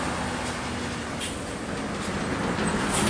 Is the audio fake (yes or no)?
no